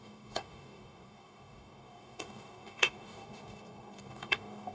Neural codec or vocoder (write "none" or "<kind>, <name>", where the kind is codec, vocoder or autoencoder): codec, DAC